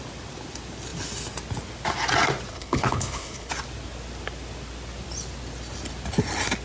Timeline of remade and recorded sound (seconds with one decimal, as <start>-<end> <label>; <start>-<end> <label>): 0.0-2.5 recorded; 2.5-3.5 remade; 3.5-6.6 recorded